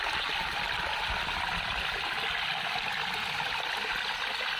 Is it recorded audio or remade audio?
recorded